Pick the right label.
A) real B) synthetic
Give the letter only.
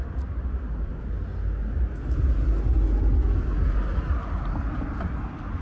A